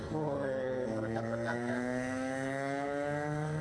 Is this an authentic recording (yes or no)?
no